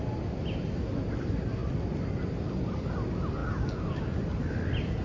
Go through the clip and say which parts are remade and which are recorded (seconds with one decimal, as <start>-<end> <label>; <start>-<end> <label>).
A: 0.0-5.0 recorded